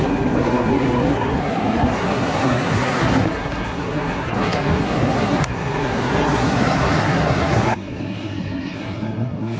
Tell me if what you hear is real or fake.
fake